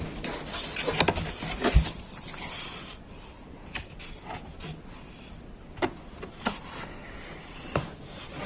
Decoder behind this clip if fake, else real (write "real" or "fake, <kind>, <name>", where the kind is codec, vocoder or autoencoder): real